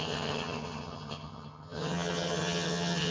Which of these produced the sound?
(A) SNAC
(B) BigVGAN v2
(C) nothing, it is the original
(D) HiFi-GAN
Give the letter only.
D